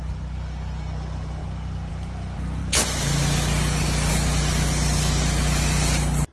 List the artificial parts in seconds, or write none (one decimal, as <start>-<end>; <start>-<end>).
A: none